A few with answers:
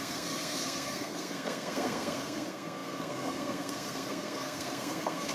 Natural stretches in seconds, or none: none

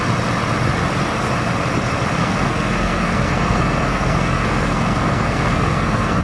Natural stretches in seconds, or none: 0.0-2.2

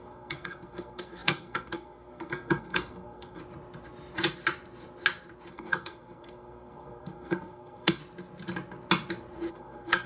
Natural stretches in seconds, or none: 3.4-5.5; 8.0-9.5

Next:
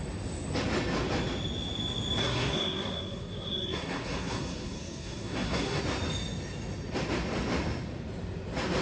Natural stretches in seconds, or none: 0.0-2.2; 5.8-8.8

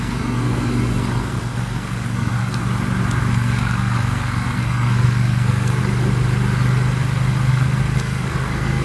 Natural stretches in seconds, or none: 2.6-3.3; 5.8-7.5

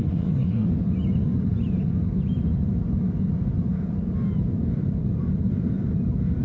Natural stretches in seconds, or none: 0.7-6.4